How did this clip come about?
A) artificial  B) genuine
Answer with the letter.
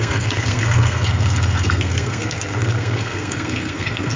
A